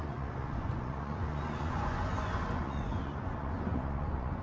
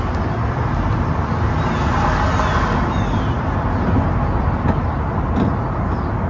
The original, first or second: second